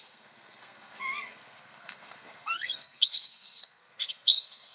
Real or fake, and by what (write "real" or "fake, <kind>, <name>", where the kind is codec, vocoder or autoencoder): fake, codec, SNAC